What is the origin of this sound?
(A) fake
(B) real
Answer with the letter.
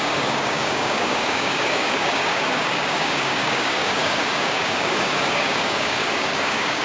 A